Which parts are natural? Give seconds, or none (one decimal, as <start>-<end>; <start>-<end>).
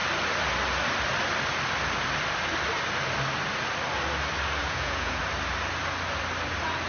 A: 0.0-4.6; 5.2-6.9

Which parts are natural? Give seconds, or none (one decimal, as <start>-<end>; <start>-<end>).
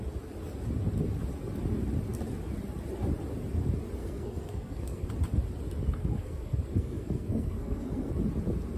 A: 0.0-4.0; 5.1-6.0; 8.1-8.8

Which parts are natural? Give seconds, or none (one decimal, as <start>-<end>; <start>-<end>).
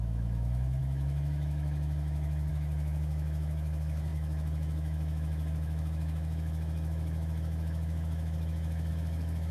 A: none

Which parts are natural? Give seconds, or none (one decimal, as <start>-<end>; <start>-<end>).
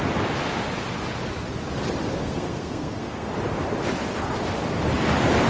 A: 0.0-2.2; 3.3-5.5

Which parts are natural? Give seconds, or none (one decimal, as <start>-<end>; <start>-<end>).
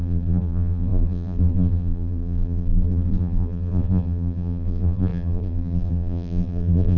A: none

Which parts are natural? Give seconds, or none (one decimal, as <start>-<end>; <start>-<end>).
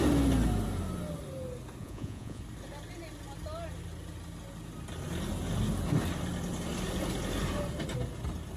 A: 0.0-1.8; 2.4-8.6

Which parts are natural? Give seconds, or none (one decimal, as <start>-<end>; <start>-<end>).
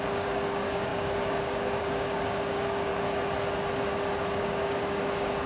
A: 2.9-4.4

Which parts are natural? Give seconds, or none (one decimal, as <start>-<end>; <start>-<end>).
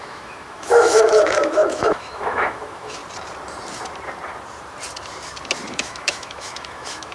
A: 3.0-5.7